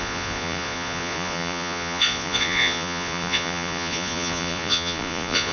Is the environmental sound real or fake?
fake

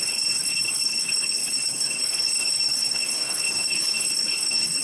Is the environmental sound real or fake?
fake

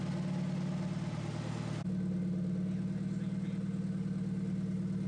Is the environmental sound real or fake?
real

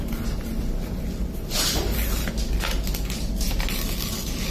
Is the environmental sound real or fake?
real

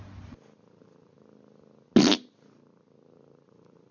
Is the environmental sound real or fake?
real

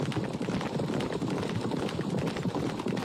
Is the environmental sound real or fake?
real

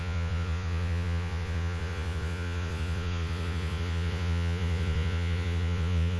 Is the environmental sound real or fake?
fake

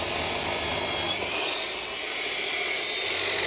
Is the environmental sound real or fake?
real